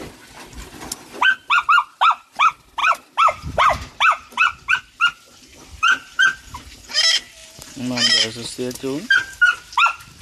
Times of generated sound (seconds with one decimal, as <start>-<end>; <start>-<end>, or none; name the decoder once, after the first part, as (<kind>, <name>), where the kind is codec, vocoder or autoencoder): 2.8-6.9 (vocoder, BigVGAN v2); 7.4-10.2